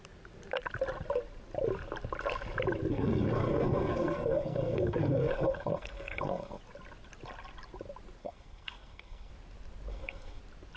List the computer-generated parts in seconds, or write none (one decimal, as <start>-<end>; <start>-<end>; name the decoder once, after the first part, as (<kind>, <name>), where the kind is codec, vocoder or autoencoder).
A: 2.9-6.6 (codec, SNAC); 8.2-9.3; 9.9-10.4